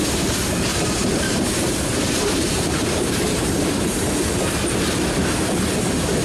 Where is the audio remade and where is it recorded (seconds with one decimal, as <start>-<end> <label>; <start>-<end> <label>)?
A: 0.0-0.7 recorded; 0.7-4.4 remade; 4.4-6.2 recorded